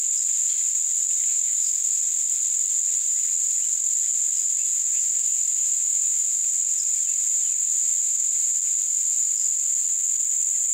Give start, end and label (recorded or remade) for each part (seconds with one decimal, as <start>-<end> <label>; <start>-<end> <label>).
0.0-1.3 recorded; 1.3-2.0 remade; 2.0-4.7 recorded; 4.7-6.2 remade; 6.2-10.7 recorded